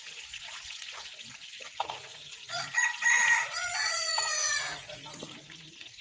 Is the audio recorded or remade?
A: remade